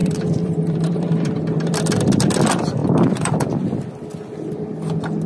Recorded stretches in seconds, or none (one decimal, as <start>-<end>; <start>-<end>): 2.4-2.8; 3.9-5.3